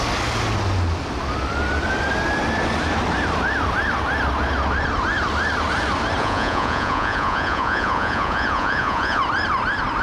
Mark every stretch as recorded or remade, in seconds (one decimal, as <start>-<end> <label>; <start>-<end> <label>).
0.0-6.2 recorded; 6.2-9.2 remade; 9.2-10.0 recorded